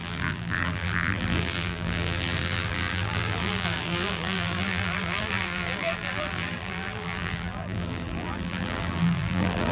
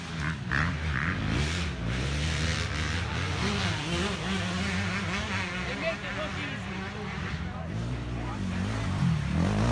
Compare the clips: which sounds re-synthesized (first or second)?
first